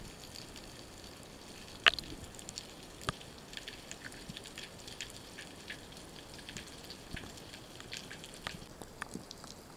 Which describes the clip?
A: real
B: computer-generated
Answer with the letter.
A